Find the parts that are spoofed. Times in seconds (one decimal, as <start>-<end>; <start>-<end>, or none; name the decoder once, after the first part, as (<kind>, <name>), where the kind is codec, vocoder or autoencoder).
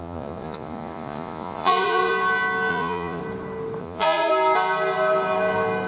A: 0.0-2.1 (vocoder, Vocos); 2.7-3.2; 3.8-4.3